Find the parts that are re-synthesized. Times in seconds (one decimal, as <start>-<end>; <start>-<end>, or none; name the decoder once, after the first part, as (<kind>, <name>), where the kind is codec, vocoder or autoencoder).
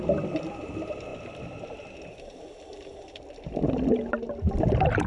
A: none